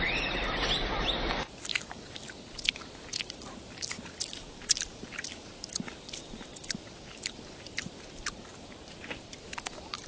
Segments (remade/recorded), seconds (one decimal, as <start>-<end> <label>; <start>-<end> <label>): 0.0-10.1 recorded